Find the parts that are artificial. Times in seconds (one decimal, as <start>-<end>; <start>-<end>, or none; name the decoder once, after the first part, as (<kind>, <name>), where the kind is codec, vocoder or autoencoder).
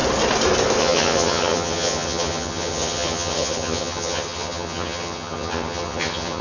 0.8-6.4 (vocoder, HiFi-GAN)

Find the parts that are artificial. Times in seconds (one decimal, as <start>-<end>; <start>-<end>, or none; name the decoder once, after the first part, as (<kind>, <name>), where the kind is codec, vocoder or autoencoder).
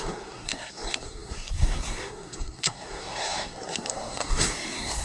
0.0-5.0 (codec, SNAC)